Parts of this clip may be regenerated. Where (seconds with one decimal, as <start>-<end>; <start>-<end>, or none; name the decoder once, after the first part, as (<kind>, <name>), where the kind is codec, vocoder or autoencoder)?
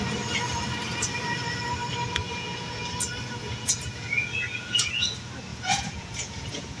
2.2-2.8 (vocoder, Vocos); 3.4-5.1; 5.5-6.8